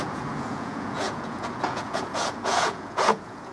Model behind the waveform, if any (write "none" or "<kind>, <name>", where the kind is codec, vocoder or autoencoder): vocoder, Vocos